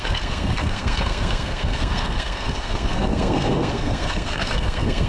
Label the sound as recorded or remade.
remade